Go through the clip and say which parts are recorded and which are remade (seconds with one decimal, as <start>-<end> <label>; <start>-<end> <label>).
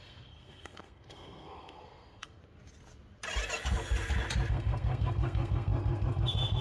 0.0-2.4 remade; 2.4-4.5 recorded; 4.5-6.6 remade